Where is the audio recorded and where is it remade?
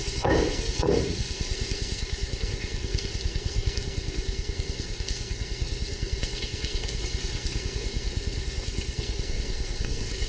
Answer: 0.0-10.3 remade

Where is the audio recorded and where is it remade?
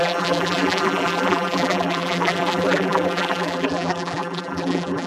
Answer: 0.0-5.1 remade